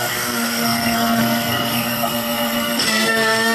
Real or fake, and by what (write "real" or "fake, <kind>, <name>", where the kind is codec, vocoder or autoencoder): fake, codec, SNAC